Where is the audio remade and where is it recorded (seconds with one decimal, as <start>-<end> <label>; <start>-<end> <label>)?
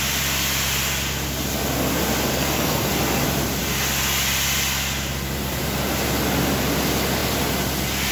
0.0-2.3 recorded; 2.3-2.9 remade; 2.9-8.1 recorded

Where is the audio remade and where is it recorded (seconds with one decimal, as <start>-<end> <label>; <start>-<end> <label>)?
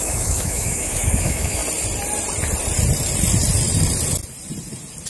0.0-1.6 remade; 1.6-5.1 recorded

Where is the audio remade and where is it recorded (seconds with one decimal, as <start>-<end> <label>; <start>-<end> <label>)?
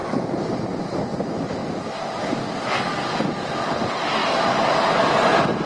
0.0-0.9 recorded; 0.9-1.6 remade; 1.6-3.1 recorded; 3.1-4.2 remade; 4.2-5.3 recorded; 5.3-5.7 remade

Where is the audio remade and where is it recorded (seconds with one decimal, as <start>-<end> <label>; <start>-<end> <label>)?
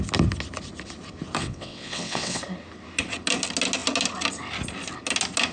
0.0-1.4 recorded; 1.4-2.4 remade; 2.4-5.5 recorded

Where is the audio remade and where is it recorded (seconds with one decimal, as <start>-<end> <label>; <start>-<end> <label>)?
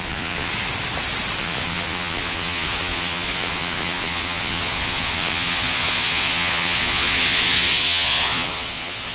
0.0-0.5 remade; 0.5-1.4 recorded; 1.4-9.1 remade